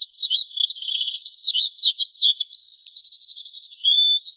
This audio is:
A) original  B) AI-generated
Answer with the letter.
B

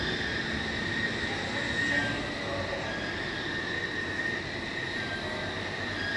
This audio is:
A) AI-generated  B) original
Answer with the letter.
B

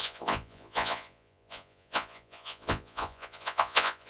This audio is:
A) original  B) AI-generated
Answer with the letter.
B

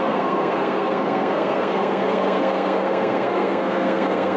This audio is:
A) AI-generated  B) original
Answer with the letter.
A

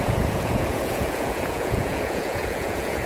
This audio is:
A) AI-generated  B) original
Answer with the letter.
A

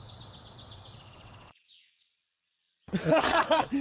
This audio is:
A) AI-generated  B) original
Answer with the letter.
A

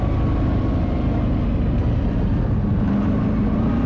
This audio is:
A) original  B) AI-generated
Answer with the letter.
A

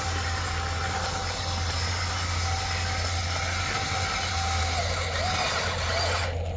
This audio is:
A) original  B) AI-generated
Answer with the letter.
A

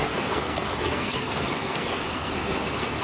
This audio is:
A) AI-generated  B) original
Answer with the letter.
A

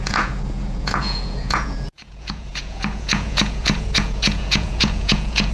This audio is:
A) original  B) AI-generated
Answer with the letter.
B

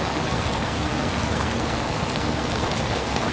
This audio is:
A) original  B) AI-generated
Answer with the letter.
B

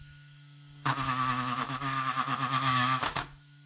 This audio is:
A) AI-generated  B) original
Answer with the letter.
A